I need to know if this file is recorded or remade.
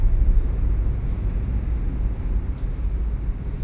recorded